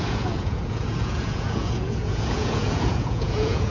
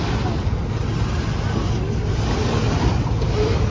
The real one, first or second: second